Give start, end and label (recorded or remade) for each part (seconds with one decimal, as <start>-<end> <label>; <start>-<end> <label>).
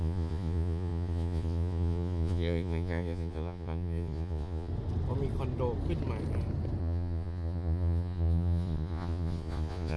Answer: 0.0-4.7 remade; 4.7-6.8 recorded; 6.8-10.0 remade